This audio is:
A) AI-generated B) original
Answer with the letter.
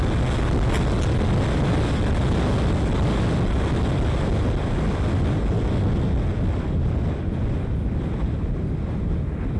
B